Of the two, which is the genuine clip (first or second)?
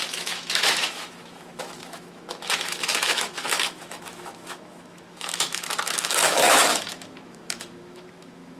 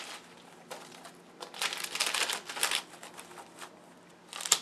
second